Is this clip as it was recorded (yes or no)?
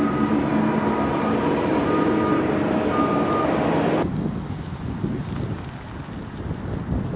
yes